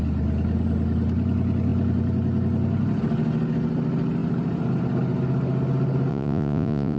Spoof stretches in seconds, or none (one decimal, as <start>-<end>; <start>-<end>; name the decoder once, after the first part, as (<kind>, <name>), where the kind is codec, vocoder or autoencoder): 6.1-7.0 (vocoder, Vocos)